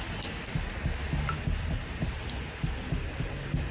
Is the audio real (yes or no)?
yes